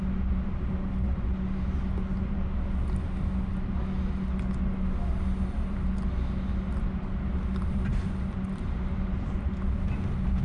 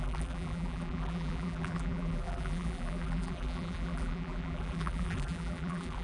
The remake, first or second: second